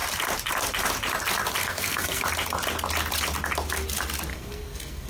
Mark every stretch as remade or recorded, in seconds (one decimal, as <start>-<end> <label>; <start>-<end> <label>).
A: 0.0-1.6 recorded; 1.6-2.2 remade; 2.2-4.3 recorded; 4.3-5.1 remade